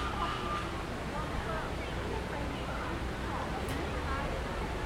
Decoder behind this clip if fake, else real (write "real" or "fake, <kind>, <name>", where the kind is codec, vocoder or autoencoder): real